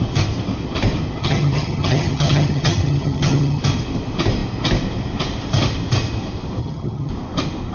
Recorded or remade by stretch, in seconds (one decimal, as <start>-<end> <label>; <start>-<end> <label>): 0.0-1.2 recorded; 1.2-3.6 remade; 3.6-6.6 recorded; 6.6-7.1 remade; 7.1-7.7 recorded